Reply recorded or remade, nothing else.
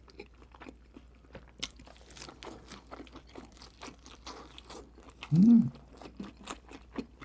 recorded